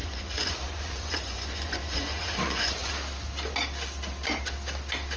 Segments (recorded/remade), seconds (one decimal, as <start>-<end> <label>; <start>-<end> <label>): 0.0-2.9 remade; 2.9-5.2 recorded